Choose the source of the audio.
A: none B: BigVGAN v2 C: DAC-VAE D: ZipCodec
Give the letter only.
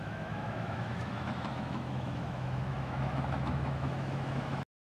C